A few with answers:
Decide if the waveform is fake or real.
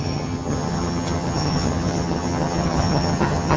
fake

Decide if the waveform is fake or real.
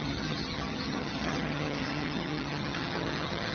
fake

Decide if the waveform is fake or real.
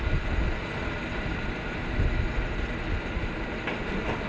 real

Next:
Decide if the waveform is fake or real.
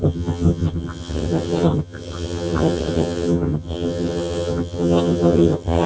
fake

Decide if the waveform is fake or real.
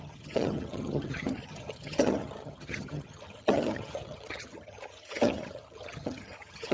fake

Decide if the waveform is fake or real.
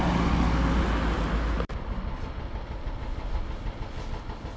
real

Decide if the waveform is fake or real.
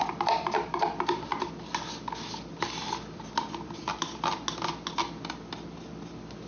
real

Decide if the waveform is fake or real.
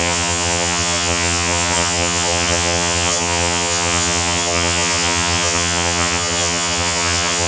fake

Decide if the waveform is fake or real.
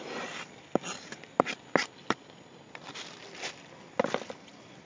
real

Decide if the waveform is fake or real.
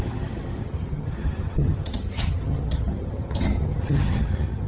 fake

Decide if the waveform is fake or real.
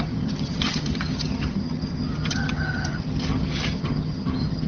fake